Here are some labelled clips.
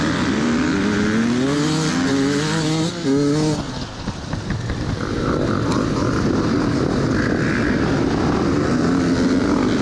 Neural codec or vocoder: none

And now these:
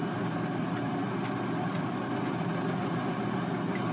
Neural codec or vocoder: none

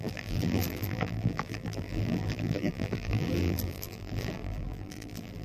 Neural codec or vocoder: vocoder, BigVGAN v2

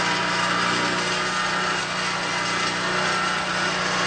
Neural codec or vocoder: none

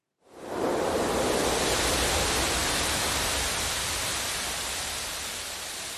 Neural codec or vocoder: none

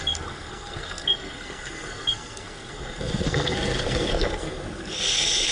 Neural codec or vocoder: codec, SNAC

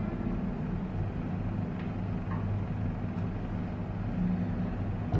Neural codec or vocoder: none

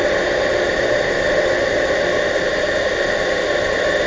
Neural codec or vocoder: none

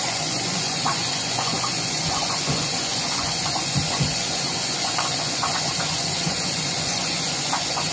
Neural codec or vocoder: vocoder, Vocos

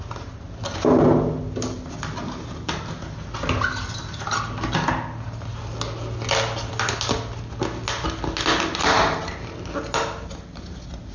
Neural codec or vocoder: none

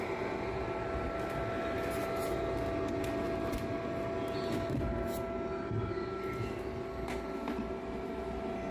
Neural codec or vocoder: none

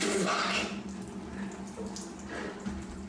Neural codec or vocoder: none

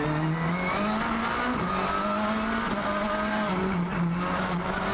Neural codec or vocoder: none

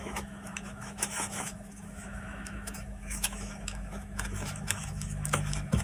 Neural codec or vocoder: autoencoder, DAC-VAE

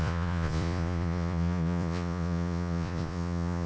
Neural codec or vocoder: vocoder, Vocos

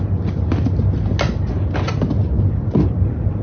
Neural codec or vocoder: none